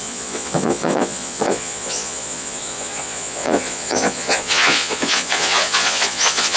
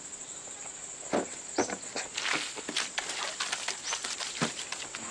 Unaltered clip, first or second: second